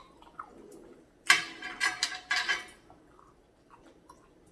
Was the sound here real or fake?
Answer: real